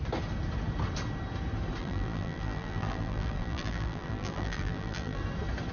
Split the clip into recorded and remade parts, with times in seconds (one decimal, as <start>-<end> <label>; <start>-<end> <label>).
0.0-1.8 recorded; 1.8-5.2 remade; 5.2-5.7 recorded